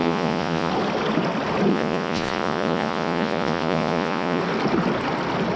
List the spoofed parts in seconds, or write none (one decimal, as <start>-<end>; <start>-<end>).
0.0-0.7; 1.7-4.4